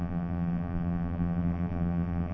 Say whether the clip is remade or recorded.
remade